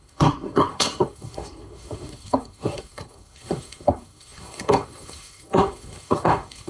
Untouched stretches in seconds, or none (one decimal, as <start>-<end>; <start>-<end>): none